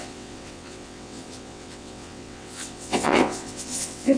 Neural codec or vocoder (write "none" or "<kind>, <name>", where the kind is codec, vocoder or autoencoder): vocoder, WaveNeXt